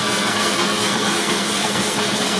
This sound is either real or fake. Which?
fake